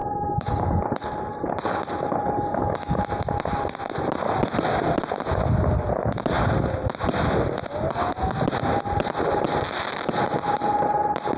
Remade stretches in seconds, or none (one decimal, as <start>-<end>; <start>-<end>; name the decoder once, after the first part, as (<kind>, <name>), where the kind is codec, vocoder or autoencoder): 0.0-0.8 (codec, DAC); 2.5-3.0